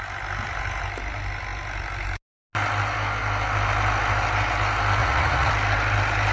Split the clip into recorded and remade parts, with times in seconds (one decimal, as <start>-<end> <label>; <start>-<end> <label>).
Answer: 0.0-5.0 recorded; 5.0-5.5 remade; 5.5-6.3 recorded